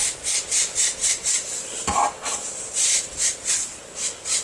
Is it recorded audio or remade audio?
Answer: recorded